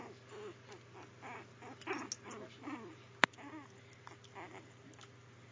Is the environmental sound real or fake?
real